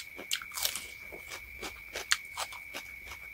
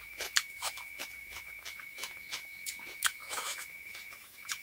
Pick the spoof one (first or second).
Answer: second